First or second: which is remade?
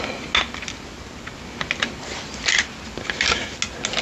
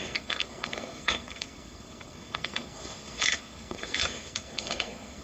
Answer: second